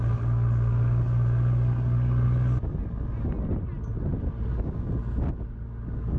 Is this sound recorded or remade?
recorded